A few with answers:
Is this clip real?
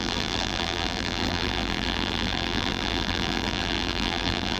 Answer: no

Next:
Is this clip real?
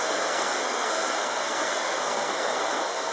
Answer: no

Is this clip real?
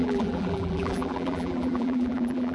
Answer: no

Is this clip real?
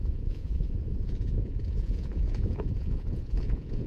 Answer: no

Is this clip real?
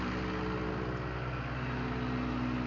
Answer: yes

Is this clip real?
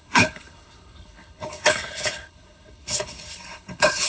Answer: no